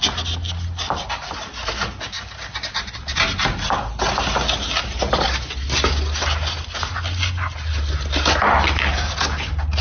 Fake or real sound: real